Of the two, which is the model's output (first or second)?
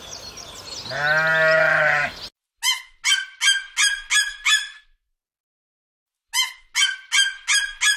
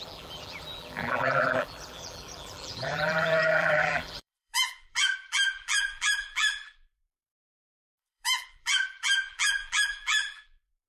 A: second